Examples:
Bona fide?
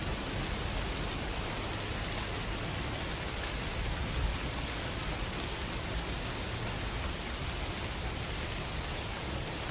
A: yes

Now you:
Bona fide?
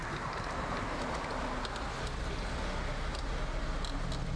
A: yes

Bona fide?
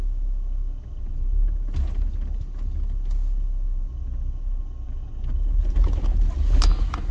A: yes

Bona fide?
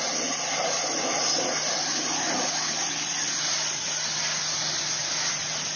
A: yes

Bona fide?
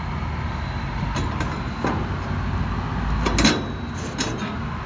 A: yes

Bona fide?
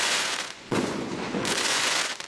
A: no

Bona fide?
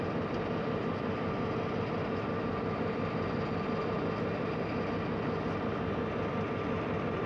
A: yes